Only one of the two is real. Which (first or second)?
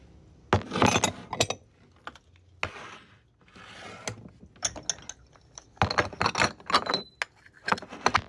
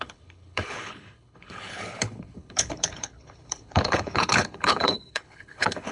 first